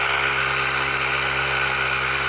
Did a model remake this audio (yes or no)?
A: no